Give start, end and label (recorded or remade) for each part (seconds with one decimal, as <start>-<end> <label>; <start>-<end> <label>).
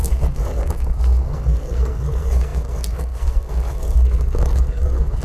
0.0-5.2 remade